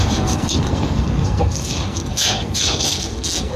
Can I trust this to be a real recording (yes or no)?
no